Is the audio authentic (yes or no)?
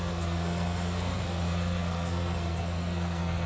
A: no